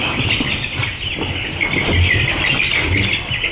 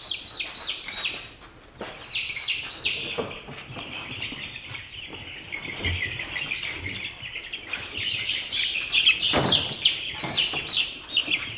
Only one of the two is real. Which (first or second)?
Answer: first